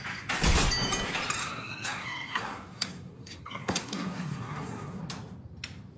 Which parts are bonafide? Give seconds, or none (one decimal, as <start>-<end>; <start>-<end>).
0.0-1.4; 5.0-6.0